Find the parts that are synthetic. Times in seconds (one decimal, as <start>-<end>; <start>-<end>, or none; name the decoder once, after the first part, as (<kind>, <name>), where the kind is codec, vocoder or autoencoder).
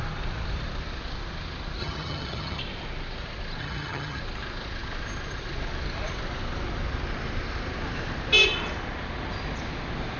1.8-2.6 (vocoder, HiFi-GAN); 3.6-4.2